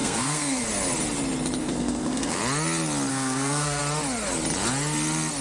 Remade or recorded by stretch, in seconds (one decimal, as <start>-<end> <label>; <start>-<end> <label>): 0.0-0.6 remade; 0.6-1.6 recorded; 1.6-2.4 remade; 2.4-3.1 recorded; 3.1-3.8 remade; 3.8-5.4 recorded